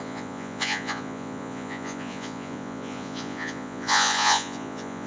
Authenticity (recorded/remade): remade